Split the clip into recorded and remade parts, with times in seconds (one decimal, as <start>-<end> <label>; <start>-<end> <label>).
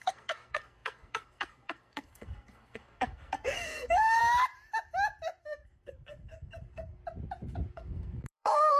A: 0.0-4.2 remade; 4.2-5.4 recorded; 5.4-7.0 remade; 7.0-7.7 recorded; 7.7-8.8 remade